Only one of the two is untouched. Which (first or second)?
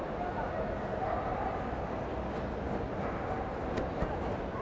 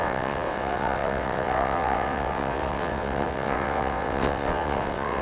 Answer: first